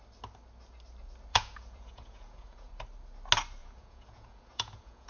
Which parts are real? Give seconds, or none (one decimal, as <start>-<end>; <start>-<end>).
0.0-1.3; 2.7-3.6